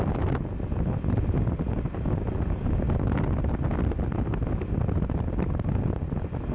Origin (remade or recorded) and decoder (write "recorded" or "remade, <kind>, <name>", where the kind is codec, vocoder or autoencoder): recorded